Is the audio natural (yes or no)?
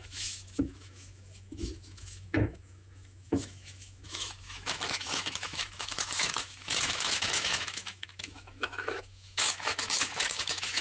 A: no